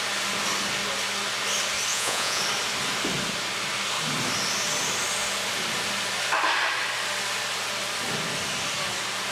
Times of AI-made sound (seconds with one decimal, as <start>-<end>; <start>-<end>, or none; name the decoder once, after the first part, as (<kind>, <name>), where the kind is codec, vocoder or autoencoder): 1.9-2.4 (vocoder, Vocos)